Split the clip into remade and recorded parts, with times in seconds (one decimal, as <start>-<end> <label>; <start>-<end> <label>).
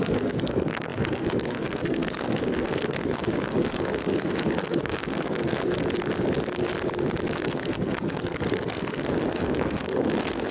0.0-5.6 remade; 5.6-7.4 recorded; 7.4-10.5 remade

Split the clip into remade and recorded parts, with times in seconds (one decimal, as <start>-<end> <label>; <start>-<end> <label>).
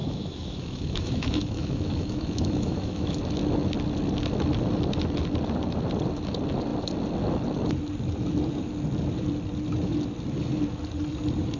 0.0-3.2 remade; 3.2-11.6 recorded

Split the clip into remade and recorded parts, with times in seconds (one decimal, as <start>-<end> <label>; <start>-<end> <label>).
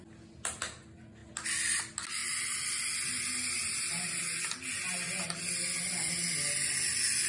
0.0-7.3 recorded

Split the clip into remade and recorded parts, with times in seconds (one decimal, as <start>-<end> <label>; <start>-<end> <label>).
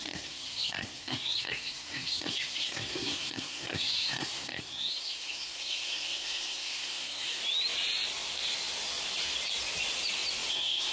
0.0-7.4 remade; 7.4-10.5 recorded; 10.5-10.9 remade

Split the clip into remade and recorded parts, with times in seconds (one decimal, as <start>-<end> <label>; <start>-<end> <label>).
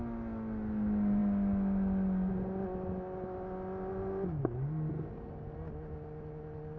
0.0-6.8 recorded